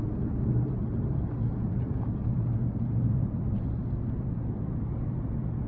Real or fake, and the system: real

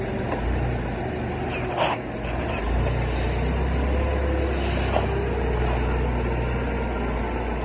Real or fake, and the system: real